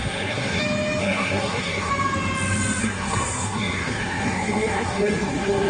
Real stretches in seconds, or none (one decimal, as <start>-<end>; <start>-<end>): 0.6-1.0; 1.9-2.8